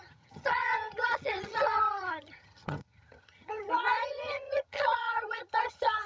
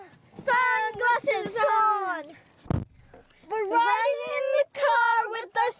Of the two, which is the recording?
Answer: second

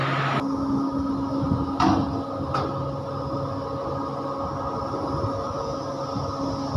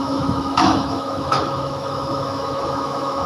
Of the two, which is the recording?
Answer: first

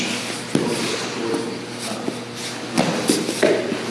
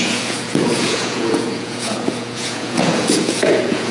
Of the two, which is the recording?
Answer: first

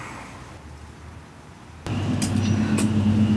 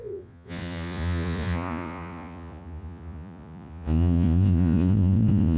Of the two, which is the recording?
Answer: first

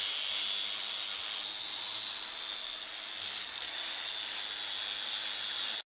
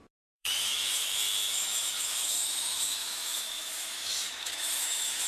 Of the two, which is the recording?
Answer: first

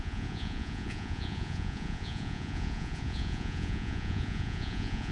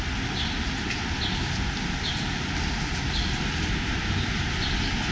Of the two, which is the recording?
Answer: second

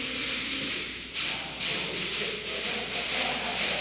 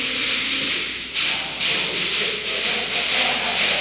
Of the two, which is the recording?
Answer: second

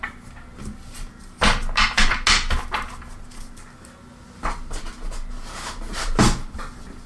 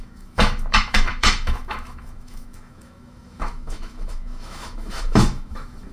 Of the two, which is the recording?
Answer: first